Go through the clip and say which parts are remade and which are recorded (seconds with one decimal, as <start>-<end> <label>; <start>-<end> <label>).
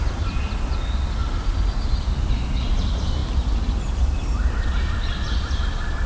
0.0-6.1 recorded